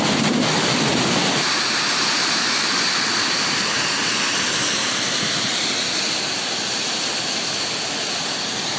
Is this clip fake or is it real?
real